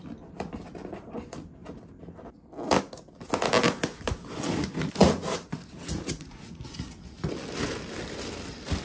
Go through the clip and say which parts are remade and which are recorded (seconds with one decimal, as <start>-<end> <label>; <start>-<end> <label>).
0.0-5.0 recorded; 5.0-6.6 remade; 6.6-8.8 recorded